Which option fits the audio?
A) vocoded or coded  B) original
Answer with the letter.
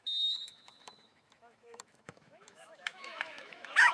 A